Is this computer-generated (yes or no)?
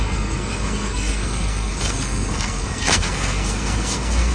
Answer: yes